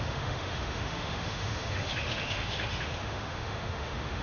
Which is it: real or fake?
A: fake